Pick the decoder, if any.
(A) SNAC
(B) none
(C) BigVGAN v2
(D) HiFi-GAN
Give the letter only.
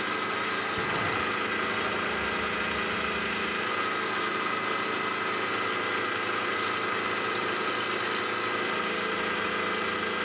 B